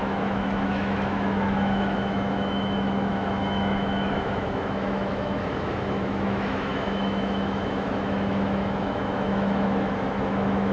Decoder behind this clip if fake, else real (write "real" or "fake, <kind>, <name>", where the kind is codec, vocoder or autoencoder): fake, autoencoder, DAC-VAE